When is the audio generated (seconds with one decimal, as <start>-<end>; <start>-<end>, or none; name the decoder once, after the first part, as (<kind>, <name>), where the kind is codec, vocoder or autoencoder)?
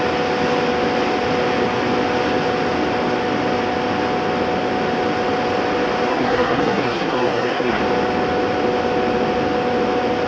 6.1-7.8 (codec, SNAC)